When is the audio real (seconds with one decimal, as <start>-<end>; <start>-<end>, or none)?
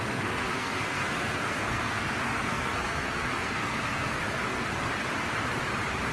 4.9-6.1